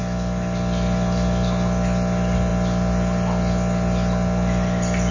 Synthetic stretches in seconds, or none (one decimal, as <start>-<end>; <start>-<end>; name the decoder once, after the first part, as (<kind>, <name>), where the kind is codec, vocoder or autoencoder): none